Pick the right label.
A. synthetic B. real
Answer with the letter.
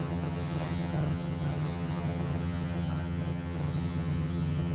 A